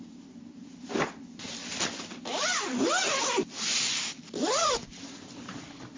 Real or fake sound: real